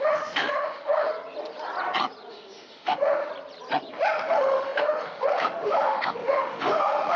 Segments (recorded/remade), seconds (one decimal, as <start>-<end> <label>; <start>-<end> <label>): 0.0-1.1 remade; 1.1-2.3 recorded; 2.3-3.3 remade; 3.3-3.9 recorded; 3.9-7.2 remade